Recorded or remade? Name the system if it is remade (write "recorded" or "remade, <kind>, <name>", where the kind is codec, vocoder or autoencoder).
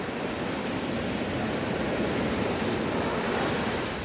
recorded